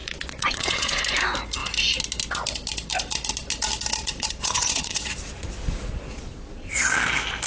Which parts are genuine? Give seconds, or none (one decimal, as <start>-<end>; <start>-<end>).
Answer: 1.0-4.0; 6.9-7.5